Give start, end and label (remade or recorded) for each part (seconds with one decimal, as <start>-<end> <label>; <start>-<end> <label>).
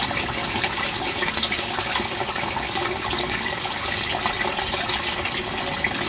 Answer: 0.0-0.4 recorded; 0.4-4.1 remade; 4.1-6.1 recorded